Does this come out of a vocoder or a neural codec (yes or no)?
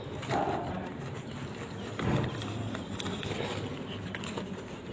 no